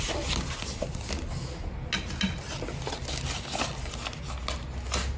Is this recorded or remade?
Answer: recorded